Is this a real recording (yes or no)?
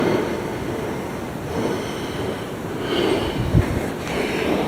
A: yes